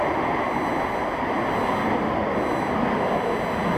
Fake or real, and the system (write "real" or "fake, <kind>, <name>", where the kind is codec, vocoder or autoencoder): real